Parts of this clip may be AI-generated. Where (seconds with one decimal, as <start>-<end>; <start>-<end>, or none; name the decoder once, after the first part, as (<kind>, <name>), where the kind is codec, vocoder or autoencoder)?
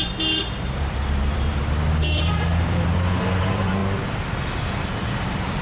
0.0-3.8 (vocoder, BigVGAN v2); 5.1-5.6